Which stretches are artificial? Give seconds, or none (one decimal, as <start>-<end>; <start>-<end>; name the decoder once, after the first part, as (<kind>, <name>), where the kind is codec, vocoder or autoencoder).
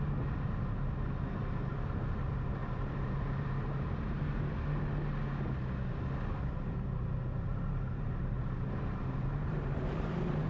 1.7-2.2 (vocoder, BigVGAN v2); 2.6-4.5; 7.5-10.5